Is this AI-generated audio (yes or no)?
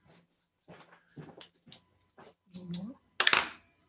no